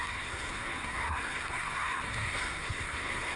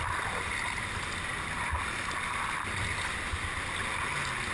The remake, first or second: first